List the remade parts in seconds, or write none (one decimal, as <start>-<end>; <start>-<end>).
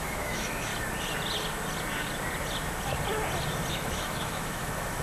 0.0-0.7; 3.7-5.0